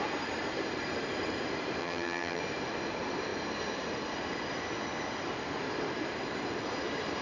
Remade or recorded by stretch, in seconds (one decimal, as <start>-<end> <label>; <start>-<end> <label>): 0.0-1.8 recorded; 1.8-2.4 remade; 2.4-7.2 recorded